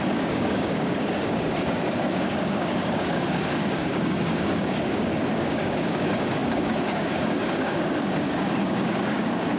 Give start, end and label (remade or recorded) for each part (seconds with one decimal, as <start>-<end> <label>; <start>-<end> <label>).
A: 0.0-9.6 remade